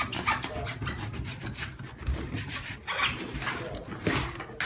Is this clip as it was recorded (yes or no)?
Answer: yes